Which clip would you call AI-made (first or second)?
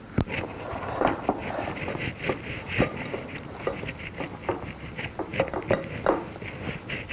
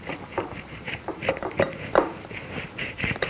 second